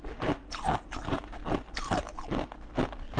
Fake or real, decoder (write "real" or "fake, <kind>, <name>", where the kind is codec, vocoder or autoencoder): real